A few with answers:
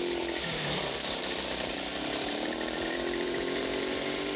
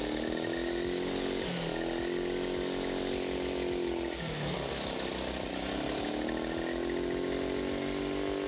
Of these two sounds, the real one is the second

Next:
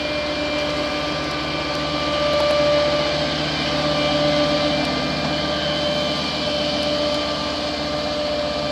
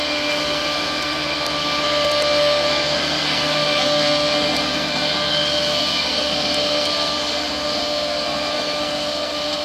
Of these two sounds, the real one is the first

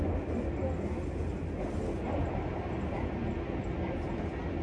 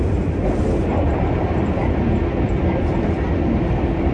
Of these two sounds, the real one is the first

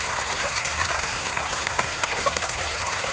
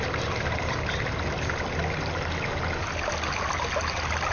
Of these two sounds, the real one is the second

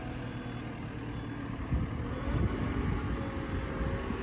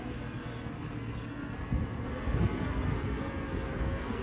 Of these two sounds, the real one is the first